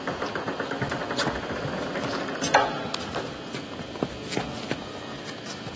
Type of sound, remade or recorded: recorded